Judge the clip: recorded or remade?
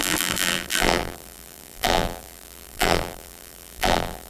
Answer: remade